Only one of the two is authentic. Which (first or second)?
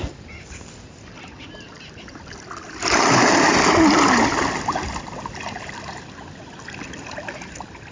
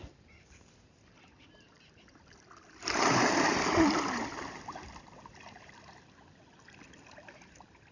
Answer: first